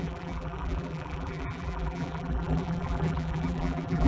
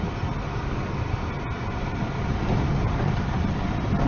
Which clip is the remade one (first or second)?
first